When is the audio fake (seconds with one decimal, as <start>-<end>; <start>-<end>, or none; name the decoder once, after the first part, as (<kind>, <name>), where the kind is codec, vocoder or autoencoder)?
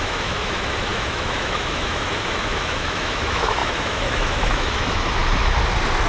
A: 0.0-5.2 (autoencoder, DAC-VAE)